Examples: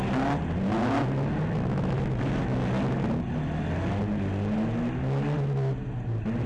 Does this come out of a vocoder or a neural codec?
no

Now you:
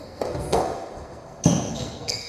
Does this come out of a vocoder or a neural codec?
yes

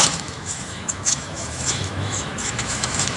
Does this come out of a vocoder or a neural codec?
yes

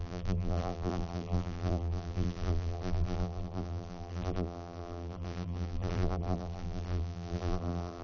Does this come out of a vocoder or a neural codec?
yes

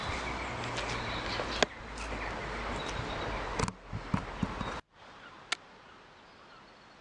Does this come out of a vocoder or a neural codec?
no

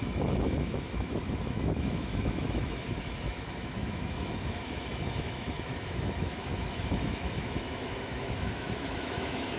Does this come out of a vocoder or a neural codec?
yes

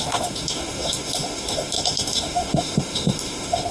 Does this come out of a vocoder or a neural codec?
yes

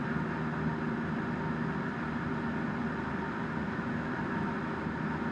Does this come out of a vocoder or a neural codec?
no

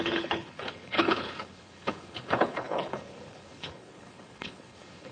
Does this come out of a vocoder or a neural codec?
yes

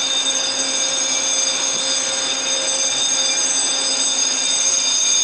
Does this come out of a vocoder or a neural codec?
no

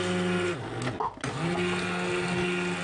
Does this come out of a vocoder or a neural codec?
no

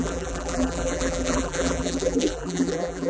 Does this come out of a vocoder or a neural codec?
yes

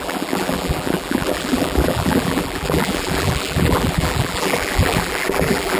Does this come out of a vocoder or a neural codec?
yes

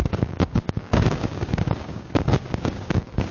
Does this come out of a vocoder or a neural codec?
yes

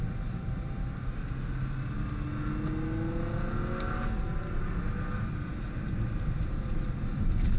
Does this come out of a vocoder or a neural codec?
no